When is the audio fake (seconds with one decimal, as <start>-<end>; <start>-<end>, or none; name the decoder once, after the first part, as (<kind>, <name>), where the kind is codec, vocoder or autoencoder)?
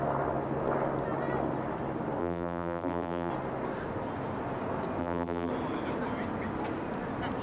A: 2.2-3.3 (vocoder, BigVGAN v2); 5.0-5.5